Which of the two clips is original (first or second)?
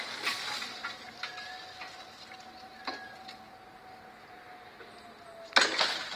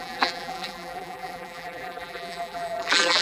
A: first